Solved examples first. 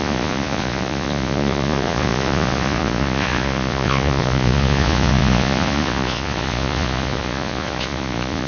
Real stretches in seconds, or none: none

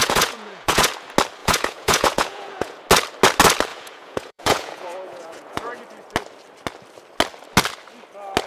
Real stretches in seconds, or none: 0.9-1.4; 2.8-3.7; 5.8-8.5

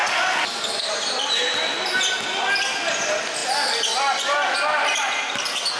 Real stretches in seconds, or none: 0.0-5.8

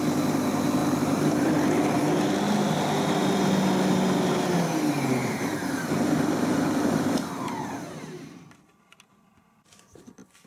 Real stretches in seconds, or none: 0.0-0.8; 1.6-5.2; 10.1-10.5

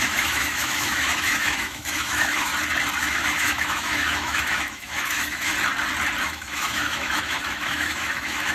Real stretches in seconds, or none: 2.5-3.0; 5.5-6.2

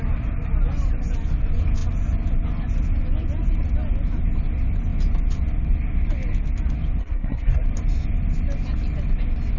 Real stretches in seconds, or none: 0.0-7.0; 7.6-9.6

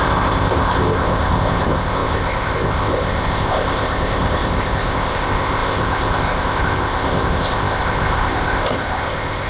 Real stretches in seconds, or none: none